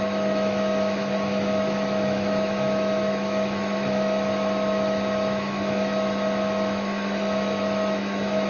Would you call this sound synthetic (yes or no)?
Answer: yes